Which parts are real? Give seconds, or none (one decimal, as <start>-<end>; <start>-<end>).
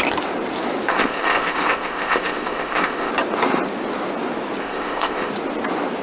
0.0-0.9; 3.1-4.6; 5.3-6.0